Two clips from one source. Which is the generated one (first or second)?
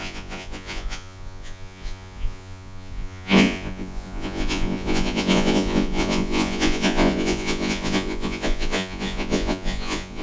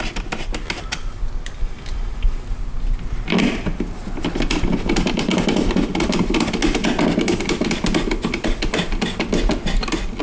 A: first